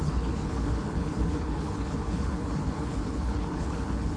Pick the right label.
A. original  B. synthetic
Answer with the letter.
B